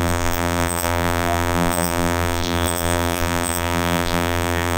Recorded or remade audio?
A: remade